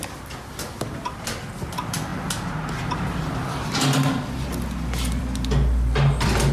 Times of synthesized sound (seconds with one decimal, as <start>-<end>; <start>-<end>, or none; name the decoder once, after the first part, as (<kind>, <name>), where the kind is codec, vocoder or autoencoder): none